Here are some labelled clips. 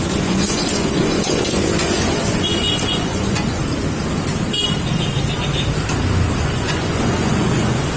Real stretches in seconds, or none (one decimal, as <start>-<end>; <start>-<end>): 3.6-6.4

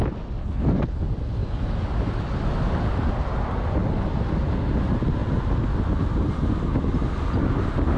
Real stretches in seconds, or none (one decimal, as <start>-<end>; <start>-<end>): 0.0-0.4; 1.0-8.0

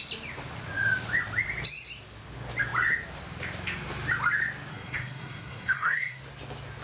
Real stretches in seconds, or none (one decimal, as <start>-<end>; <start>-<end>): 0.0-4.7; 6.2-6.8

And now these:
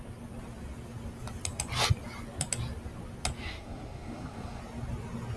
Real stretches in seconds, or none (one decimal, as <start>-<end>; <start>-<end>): 0.0-3.4; 4.6-5.4

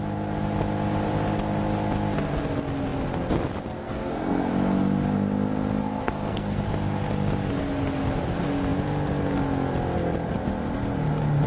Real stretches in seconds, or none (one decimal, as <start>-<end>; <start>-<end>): 0.0-3.8; 4.5-5.8; 6.6-11.5

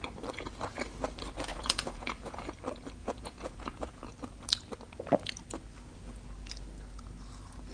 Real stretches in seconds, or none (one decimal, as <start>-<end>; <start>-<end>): 0.0-1.5; 2.5-3.0; 4.1-7.7